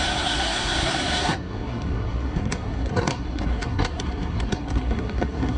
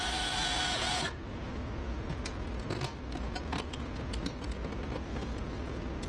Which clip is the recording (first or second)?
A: second